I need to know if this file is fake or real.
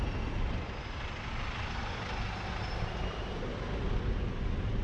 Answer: real